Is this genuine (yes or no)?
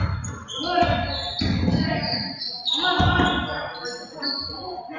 yes